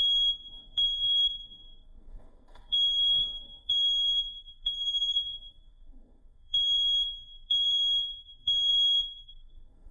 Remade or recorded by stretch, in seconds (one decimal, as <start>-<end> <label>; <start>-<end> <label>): 0.0-9.9 remade